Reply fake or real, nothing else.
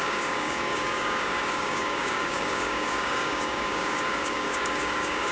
fake